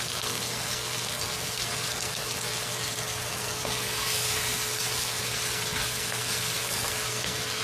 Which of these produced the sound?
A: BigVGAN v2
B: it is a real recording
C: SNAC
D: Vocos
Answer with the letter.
C